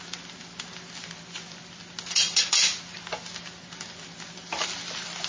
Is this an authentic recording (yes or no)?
yes